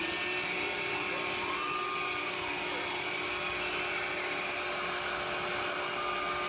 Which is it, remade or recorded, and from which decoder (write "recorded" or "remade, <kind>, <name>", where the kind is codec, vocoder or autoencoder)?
recorded